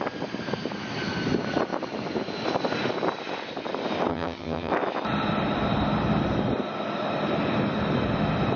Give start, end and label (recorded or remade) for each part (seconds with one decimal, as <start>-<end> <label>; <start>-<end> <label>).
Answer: 0.0-4.1 recorded; 4.1-4.7 remade; 4.7-8.6 recorded